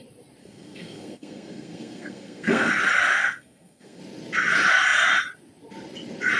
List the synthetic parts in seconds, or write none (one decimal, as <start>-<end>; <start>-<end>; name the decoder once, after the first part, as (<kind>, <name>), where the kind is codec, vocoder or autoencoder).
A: 0.4-2.7 (codec, SNAC); 3.2-4.0